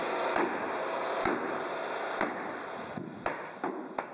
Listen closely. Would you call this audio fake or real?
real